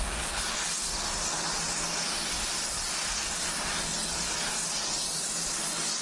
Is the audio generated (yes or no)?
no